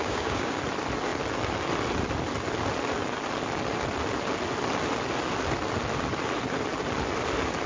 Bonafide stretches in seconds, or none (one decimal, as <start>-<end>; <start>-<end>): 0.6-7.7

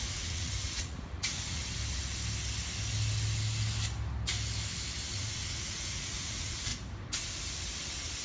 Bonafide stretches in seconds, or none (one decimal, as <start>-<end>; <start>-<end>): 1.6-5.1; 6.7-8.2